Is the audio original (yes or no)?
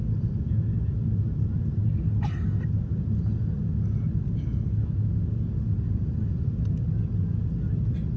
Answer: yes